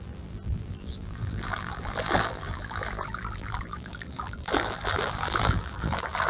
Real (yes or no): no